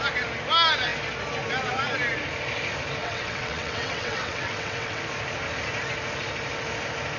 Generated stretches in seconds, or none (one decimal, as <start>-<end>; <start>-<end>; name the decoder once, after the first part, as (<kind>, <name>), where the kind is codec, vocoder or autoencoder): 3.0-5.0 (vocoder, WaveNeXt)